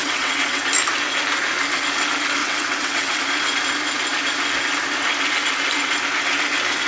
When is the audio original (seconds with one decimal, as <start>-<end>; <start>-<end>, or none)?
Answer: 0.6-2.4; 3.2-6.9